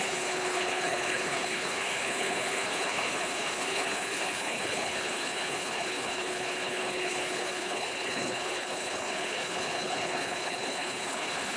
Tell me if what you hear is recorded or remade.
remade